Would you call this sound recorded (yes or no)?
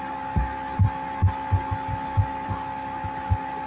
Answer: yes